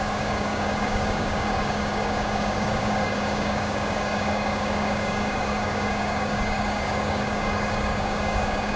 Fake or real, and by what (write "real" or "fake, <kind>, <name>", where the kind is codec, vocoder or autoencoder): fake, codec, DAC